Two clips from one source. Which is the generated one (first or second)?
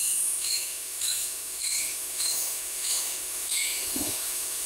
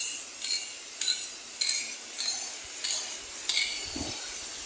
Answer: first